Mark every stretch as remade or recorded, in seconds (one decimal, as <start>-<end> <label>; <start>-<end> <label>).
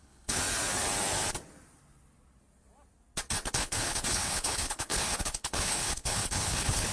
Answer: 0.0-0.4 remade; 0.4-3.5 recorded; 3.5-6.9 remade